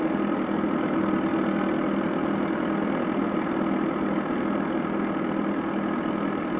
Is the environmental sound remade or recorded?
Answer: recorded